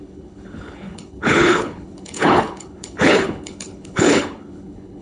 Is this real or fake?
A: fake